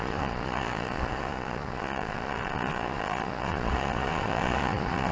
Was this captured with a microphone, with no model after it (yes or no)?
no